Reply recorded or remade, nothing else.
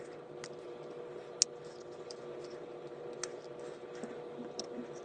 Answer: recorded